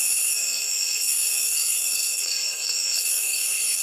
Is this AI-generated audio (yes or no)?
yes